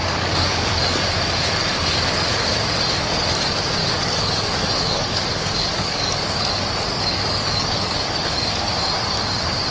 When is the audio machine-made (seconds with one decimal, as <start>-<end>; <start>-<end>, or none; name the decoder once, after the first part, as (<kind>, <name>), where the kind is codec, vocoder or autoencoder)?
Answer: 0.0-0.7 (codec, DAC); 3.8-6.5; 6.9-8.7